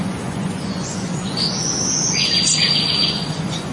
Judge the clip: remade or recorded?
remade